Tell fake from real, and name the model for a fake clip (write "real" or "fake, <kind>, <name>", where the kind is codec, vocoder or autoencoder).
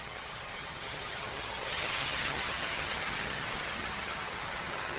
fake, vocoder, HiFi-GAN